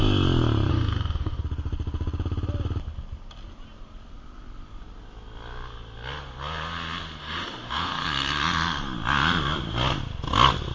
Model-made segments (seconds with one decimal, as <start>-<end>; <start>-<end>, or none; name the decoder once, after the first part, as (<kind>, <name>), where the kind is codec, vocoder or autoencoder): 0.7-1.4 (autoencoder, DAC-VAE); 7.2-7.9

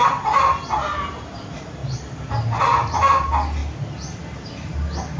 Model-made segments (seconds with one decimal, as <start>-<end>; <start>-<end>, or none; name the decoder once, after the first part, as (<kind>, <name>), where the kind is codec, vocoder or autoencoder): none

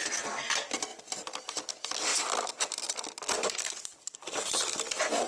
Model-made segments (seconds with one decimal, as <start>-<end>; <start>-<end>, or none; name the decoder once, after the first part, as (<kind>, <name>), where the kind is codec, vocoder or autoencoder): none

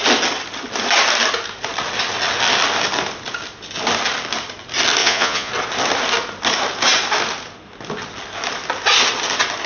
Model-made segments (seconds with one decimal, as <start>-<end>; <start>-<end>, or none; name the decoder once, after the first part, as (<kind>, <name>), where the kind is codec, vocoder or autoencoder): 5.0-5.5 (vocoder, Vocos)

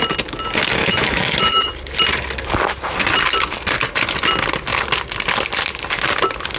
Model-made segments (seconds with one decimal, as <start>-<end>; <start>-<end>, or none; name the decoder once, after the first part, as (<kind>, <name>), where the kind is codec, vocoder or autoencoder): 0.8-1.7 (autoencoder, DAC-VAE)

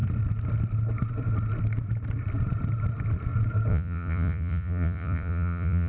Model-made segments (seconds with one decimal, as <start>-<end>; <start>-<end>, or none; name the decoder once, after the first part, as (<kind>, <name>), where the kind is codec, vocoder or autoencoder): 3.7-5.9 (vocoder, Vocos)